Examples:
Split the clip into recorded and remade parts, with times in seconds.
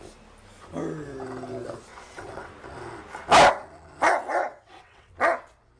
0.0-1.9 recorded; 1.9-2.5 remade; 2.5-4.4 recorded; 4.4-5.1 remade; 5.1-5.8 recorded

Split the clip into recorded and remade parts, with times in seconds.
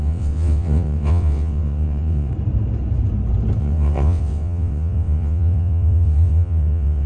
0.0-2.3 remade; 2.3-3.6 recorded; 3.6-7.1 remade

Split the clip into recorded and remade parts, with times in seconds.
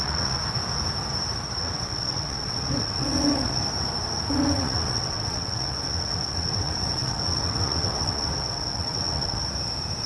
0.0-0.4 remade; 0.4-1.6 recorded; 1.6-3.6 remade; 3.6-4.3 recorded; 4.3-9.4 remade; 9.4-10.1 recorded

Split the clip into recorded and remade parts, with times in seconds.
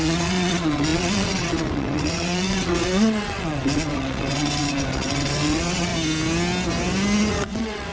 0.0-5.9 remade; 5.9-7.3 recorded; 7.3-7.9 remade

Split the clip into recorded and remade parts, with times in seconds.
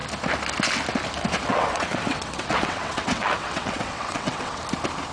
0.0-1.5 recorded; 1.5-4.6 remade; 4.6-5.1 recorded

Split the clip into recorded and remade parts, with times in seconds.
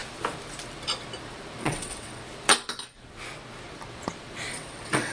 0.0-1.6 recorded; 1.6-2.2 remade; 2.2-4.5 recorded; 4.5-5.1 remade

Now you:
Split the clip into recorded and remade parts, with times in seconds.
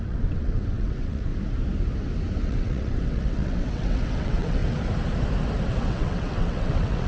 0.0-1.3 remade; 1.3-2.4 recorded; 2.4-4.6 remade; 4.6-5.7 recorded; 5.7-7.1 remade